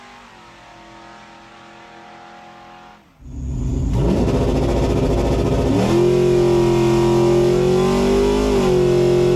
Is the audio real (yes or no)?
yes